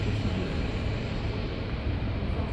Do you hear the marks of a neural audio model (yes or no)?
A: yes